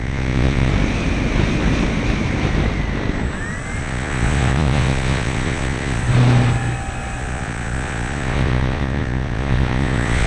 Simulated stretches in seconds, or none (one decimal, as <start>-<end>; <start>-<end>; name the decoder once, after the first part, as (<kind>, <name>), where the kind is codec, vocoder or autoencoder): 0.0-0.7 (vocoder, Vocos); 3.8-6.0; 7.2-10.3